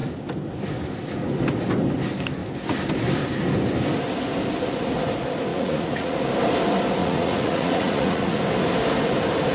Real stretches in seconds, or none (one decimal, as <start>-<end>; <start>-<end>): 0.0-5.5; 6.2-7.0; 8.4-9.5

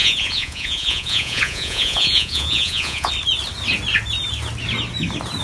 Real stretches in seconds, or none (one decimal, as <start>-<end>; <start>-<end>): 3.1-5.4

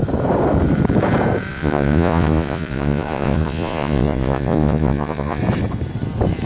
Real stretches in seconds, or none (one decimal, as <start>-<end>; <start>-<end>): 0.0-1.5; 5.4-6.5